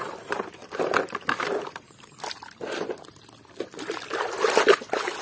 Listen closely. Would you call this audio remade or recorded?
recorded